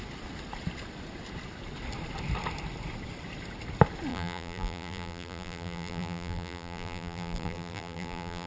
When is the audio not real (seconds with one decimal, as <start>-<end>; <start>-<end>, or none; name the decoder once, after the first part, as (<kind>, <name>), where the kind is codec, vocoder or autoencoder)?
4.1-8.5 (vocoder, BigVGAN v2)